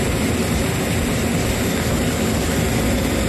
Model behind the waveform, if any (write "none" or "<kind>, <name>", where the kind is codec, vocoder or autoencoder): none